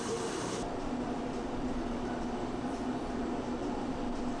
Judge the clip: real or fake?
fake